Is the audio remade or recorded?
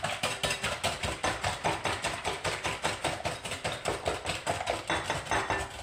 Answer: recorded